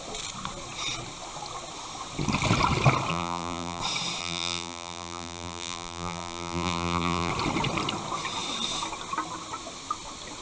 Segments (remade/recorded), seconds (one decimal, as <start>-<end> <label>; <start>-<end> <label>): 0.0-3.1 recorded; 3.1-3.8 remade; 3.8-4.2 recorded; 4.2-7.3 remade; 7.3-10.4 recorded